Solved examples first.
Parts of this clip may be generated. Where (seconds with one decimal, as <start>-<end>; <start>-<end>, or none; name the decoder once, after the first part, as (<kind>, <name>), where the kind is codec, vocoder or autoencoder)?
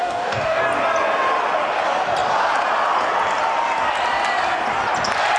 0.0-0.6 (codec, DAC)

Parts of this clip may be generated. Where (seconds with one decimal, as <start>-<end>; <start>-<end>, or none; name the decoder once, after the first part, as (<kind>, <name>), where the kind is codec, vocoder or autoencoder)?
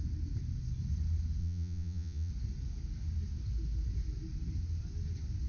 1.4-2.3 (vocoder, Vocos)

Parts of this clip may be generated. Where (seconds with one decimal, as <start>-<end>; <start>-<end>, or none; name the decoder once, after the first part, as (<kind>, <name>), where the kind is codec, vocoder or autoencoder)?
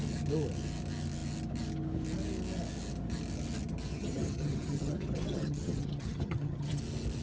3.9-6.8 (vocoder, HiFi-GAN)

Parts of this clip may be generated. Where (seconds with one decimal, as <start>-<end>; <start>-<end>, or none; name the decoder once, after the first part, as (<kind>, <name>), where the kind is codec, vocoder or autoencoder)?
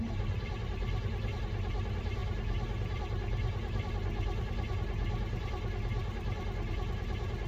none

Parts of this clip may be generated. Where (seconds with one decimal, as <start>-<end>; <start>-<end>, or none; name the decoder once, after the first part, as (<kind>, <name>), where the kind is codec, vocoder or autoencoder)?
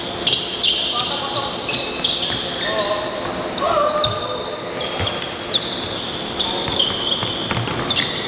7.2-8.3 (vocoder, BigVGAN v2)